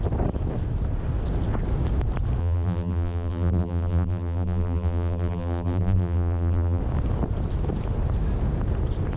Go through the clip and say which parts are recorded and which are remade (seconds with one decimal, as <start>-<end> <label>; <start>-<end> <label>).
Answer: 0.0-2.4 recorded; 2.4-6.8 remade; 6.8-9.2 recorded